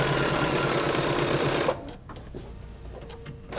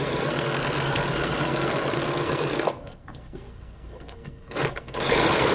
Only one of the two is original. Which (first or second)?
first